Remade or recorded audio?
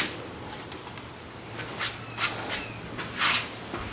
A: recorded